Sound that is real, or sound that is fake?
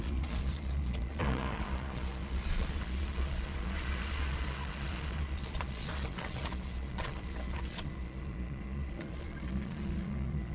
fake